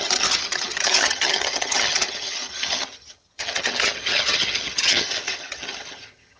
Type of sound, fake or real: fake